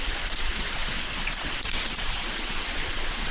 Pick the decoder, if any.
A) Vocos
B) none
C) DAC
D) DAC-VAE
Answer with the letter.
A